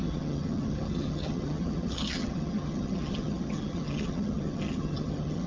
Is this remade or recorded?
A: remade